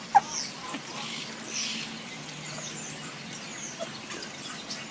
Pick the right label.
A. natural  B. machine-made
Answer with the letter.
A